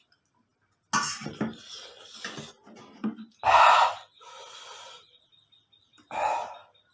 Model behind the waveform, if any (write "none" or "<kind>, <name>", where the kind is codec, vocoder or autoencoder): none